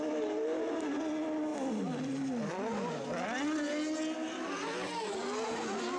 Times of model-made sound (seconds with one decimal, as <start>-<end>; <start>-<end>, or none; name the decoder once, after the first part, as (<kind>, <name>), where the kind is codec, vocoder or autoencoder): none